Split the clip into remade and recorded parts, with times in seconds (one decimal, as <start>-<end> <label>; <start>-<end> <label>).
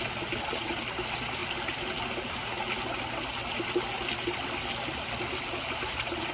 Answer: 0.0-6.3 recorded